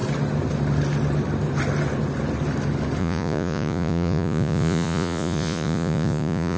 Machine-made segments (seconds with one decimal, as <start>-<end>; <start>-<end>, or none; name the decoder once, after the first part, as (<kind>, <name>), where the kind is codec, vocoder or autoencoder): 3.0-6.6 (vocoder, Vocos)